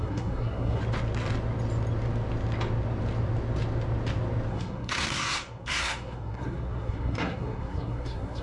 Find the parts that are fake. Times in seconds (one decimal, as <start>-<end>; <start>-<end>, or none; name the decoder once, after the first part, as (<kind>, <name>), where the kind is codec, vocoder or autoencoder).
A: 0.0-0.8 (codec, SNAC); 4.5-8.4